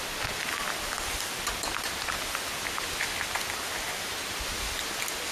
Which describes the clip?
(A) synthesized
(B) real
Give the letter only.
B